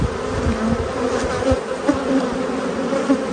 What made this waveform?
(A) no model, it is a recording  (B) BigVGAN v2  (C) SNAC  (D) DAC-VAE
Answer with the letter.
B